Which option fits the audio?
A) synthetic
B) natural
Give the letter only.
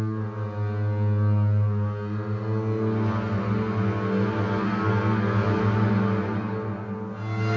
B